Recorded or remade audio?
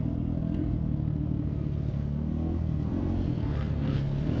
remade